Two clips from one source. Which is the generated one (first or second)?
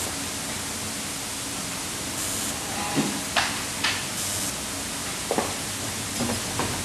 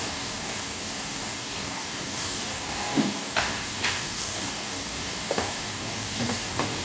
second